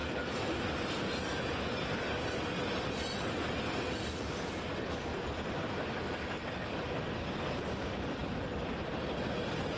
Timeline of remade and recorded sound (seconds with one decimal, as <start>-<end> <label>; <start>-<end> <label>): 0.0-9.8 recorded